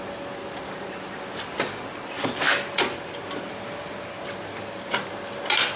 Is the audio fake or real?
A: real